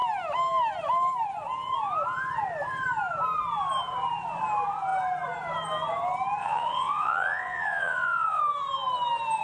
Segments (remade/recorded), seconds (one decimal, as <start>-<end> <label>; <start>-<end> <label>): 0.0-6.4 recorded; 6.4-8.4 remade; 8.4-9.4 recorded